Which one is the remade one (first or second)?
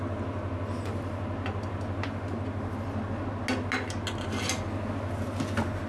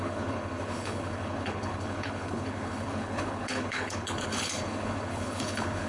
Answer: second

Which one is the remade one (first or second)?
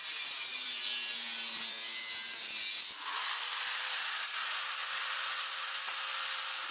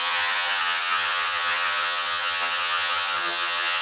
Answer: second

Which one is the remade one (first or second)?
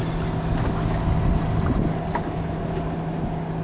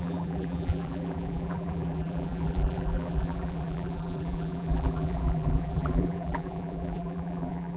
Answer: second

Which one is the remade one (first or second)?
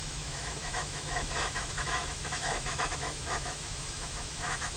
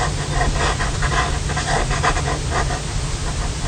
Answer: first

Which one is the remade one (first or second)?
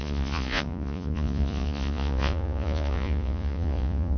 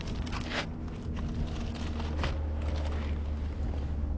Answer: first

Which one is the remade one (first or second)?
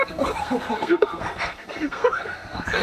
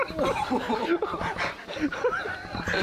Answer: first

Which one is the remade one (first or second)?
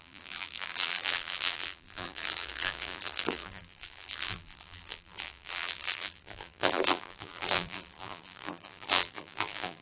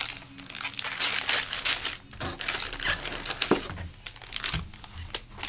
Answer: first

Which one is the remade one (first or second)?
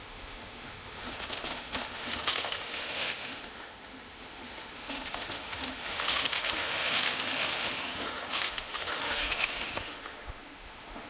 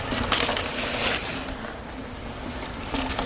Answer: first